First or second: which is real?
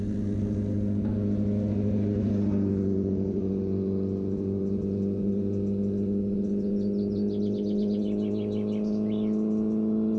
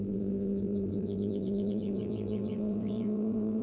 first